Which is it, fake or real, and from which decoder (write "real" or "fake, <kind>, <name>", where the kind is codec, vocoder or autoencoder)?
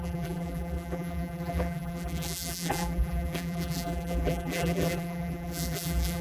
fake, vocoder, BigVGAN v2